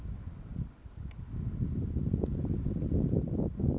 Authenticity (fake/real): real